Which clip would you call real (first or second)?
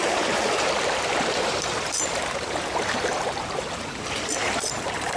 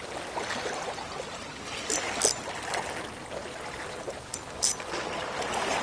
second